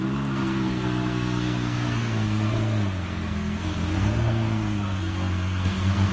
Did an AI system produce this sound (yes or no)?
yes